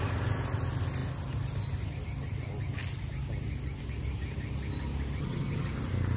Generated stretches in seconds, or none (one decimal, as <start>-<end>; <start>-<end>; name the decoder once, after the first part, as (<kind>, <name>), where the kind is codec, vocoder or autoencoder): 5.2-5.7 (vocoder, HiFi-GAN)